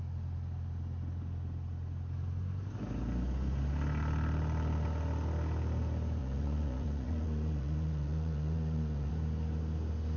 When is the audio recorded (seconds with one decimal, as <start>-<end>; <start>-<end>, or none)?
0.0-6.2; 9.1-10.2